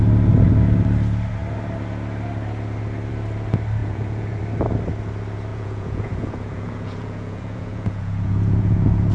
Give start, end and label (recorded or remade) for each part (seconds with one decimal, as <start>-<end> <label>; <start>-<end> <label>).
0.0-3.8 recorded; 3.8-4.4 remade; 4.4-5.5 recorded; 5.5-9.1 remade